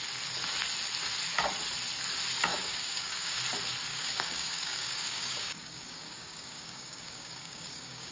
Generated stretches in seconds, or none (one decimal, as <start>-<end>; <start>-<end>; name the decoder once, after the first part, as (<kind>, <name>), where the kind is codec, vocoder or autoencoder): 2.5-3.4 (codec, DAC); 3.9-8.1